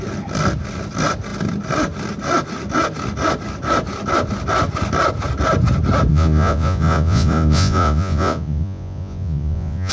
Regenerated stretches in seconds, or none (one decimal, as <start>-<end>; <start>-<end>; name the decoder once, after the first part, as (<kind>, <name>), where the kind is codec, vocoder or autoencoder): 6.1-9.9 (vocoder, Vocos)